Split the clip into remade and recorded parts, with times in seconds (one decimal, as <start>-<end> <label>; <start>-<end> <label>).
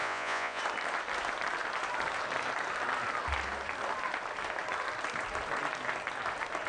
0.0-0.6 remade; 0.6-6.7 recorded